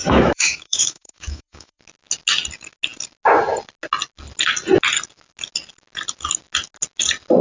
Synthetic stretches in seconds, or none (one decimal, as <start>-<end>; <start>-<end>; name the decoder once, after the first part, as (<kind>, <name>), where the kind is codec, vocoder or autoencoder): 0.0-1.8 (autoencoder, DAC-VAE)